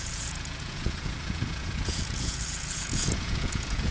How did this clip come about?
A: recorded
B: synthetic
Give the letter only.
B